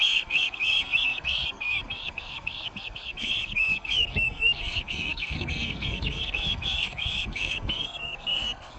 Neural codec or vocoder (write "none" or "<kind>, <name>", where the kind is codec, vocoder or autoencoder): codec, SNAC